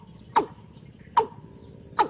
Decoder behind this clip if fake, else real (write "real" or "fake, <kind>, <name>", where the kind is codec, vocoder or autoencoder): real